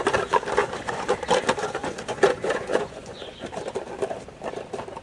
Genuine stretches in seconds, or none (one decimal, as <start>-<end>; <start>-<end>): 0.0-0.6; 1.1-1.6; 3.4-5.0